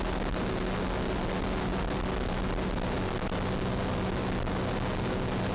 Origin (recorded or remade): recorded